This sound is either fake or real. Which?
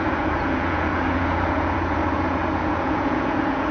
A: fake